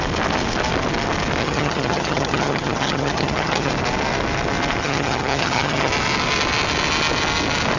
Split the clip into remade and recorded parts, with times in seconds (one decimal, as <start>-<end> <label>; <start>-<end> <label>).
0.0-1.4 recorded; 1.4-3.7 remade; 3.7-4.8 recorded; 4.8-5.9 remade; 5.9-7.8 recorded